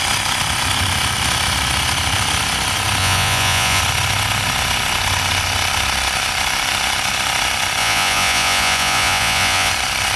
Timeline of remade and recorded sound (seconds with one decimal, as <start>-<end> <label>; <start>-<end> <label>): 0.0-3.0 recorded; 3.0-3.8 remade; 3.8-7.8 recorded; 7.8-9.7 remade; 9.7-10.2 recorded

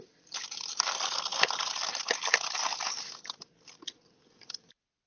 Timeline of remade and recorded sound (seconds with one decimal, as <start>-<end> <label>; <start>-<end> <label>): 0.0-5.1 recorded

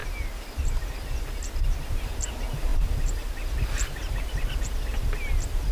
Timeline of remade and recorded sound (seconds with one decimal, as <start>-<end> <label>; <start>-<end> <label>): 0.0-5.7 recorded

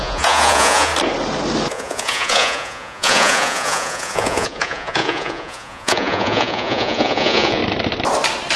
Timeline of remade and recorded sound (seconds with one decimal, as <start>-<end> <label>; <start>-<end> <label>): 0.0-0.9 remade; 0.9-1.7 recorded; 1.7-7.6 remade; 7.6-8.6 recorded

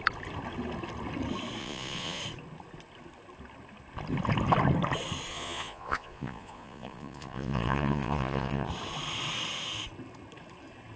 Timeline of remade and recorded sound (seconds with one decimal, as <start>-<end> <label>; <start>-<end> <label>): 0.0-1.6 recorded; 1.6-2.2 remade; 2.2-5.3 recorded; 5.3-8.7 remade; 8.7-11.0 recorded